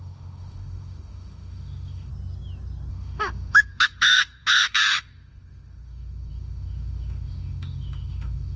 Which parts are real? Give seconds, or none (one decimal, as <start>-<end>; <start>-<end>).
2.1-2.9